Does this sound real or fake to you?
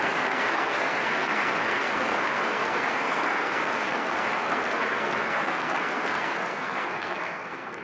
fake